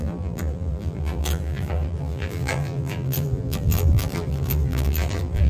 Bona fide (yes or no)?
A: no